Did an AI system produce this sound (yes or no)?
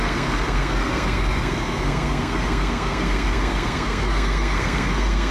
yes